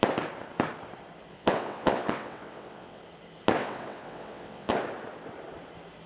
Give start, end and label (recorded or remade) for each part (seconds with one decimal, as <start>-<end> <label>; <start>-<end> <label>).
0.0-1.3 recorded; 1.3-3.0 remade; 3.0-3.6 recorded; 3.6-4.7 remade; 4.7-6.1 recorded